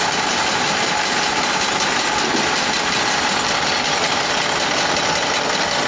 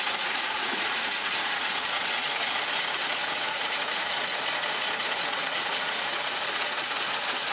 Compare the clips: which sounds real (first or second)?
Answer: first